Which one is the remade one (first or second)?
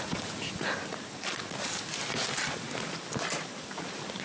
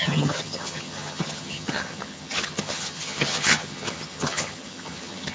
second